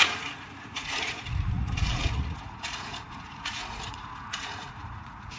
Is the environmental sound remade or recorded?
remade